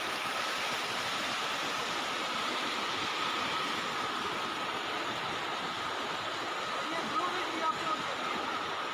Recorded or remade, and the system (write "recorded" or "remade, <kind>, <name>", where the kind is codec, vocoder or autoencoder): recorded